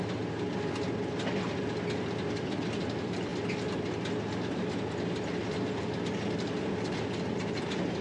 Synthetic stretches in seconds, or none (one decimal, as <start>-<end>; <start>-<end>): none